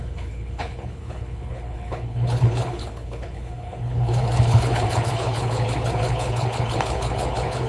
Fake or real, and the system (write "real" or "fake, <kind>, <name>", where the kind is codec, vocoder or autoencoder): fake, codec, HILCodec